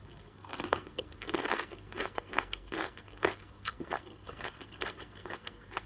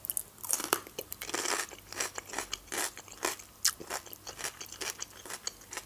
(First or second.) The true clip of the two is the second